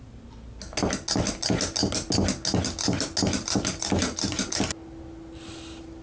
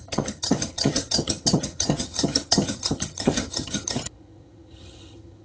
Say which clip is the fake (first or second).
second